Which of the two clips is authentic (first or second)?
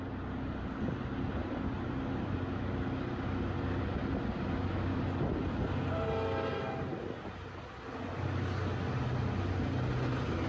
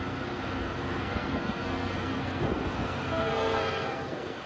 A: first